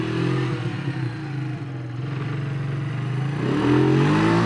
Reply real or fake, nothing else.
real